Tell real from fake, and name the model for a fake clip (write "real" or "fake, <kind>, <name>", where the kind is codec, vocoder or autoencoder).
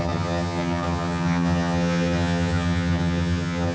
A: fake, vocoder, HiFi-GAN